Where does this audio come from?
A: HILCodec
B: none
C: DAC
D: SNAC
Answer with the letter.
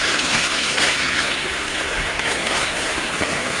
D